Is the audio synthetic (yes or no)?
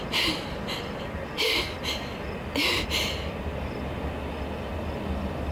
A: no